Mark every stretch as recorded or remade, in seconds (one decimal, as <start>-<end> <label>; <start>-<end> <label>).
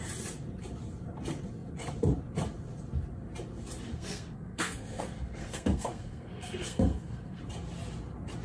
0.0-3.9 recorded; 3.9-7.4 remade; 7.4-8.4 recorded